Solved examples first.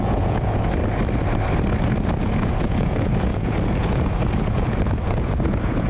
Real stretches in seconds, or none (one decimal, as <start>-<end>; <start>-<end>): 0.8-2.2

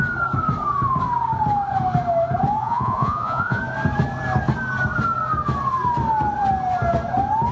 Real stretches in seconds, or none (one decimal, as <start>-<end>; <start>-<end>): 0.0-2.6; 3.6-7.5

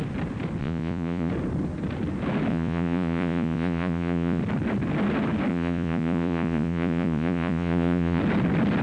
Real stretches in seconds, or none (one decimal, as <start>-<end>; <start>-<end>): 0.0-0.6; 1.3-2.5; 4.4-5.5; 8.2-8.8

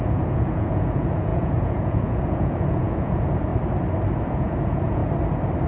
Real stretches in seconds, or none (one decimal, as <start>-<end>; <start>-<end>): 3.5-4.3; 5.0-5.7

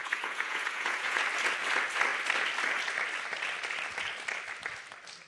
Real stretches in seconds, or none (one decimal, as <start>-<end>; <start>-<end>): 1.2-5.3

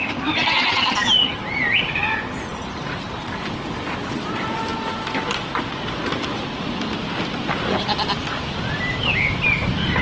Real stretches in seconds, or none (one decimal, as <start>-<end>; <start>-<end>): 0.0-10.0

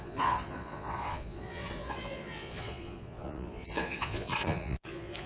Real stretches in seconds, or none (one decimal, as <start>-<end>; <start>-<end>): none